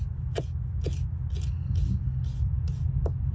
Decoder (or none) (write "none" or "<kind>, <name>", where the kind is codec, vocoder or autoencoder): none